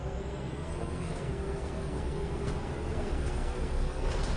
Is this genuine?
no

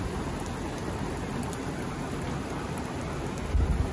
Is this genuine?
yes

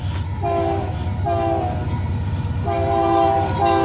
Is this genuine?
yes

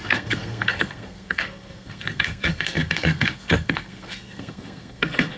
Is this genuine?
no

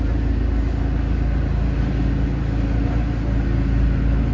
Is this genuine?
yes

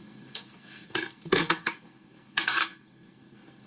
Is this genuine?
no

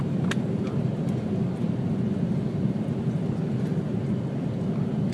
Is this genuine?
yes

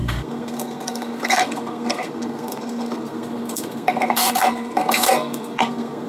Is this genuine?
no